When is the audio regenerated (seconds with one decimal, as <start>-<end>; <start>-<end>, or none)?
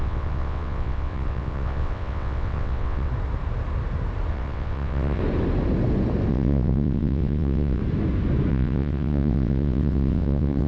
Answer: 0.0-3.1; 4.3-5.2; 6.3-7.8; 8.5-10.7